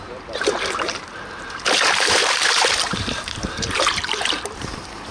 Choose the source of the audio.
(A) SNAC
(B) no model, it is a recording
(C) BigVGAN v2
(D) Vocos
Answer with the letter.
C